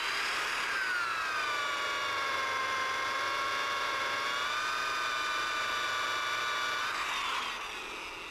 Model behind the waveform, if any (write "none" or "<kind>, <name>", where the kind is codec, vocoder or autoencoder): none